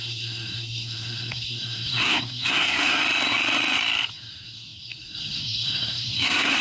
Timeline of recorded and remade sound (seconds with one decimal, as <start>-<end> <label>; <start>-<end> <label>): 0.0-3.0 remade; 3.0-4.1 recorded; 4.1-6.6 remade